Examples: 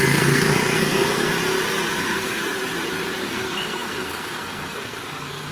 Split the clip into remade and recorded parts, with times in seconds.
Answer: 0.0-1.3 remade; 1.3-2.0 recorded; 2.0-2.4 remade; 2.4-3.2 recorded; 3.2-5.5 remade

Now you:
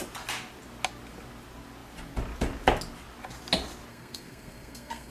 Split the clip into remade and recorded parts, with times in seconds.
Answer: 0.0-3.9 recorded; 3.9-5.1 remade

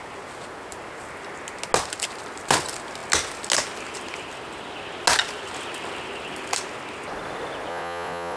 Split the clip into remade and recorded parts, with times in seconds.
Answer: 0.0-7.7 recorded; 7.7-8.4 remade

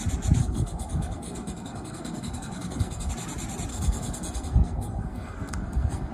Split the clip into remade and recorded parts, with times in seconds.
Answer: 0.0-0.4 recorded; 0.4-3.1 remade; 3.1-3.7 recorded; 3.7-6.1 remade